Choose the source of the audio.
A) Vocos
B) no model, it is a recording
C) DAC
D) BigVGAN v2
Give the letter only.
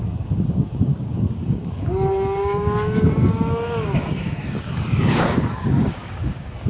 C